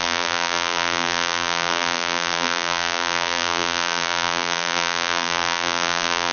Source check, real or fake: fake